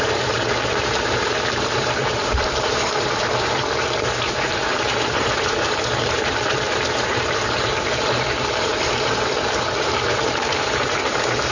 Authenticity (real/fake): fake